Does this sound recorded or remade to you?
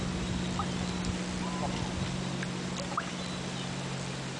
recorded